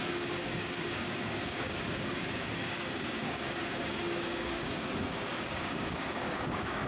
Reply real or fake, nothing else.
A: fake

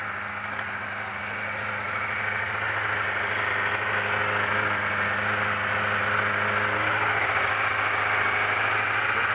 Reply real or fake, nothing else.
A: real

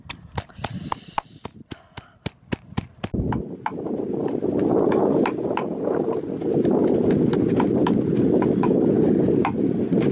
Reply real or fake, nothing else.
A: real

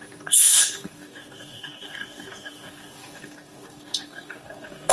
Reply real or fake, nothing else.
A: fake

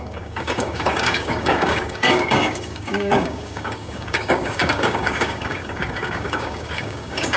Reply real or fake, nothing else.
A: fake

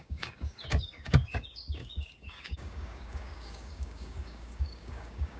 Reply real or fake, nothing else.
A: fake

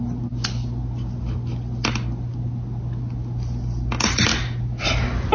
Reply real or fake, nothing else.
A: real